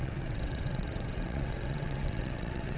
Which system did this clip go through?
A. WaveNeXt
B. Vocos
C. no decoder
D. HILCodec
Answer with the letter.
A